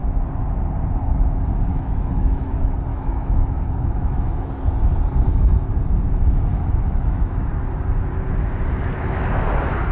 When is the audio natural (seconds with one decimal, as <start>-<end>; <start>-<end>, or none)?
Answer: 0.0-1.7; 2.5-2.9; 4.6-6.5; 7.5-9.9